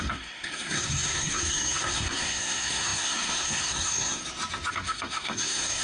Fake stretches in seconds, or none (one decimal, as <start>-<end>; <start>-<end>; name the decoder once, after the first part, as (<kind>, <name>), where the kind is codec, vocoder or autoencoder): 0.0-4.2 (codec, SNAC); 4.7-5.8